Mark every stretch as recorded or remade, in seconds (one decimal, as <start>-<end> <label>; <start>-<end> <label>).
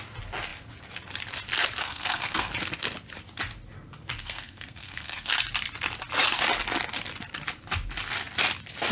0.0-1.8 recorded; 1.8-2.5 remade; 2.5-4.2 recorded; 4.2-5.3 remade; 5.3-8.9 recorded